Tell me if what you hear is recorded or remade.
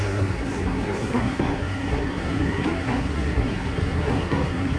remade